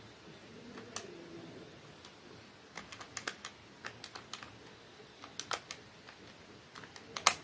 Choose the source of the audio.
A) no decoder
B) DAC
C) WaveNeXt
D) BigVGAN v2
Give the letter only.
A